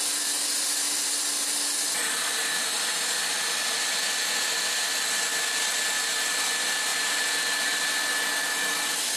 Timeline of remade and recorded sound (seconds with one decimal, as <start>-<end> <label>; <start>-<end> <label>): 0.0-9.2 recorded